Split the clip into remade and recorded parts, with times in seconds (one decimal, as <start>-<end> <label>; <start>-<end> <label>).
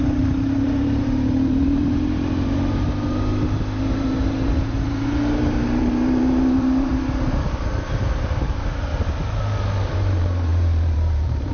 0.0-3.3 remade; 3.3-3.8 recorded; 3.8-6.9 remade; 6.9-8.0 recorded; 8.0-8.9 remade; 8.9-9.8 recorded; 9.8-11.5 remade